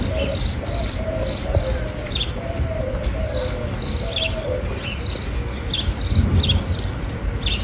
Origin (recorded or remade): recorded